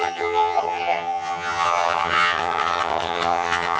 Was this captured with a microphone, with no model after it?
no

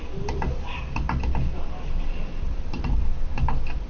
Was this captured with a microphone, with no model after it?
yes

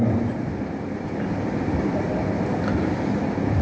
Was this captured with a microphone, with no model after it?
yes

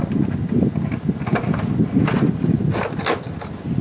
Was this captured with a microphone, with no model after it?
yes